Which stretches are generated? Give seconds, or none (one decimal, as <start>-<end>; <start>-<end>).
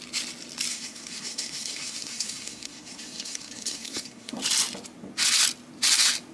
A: 0.7-4.4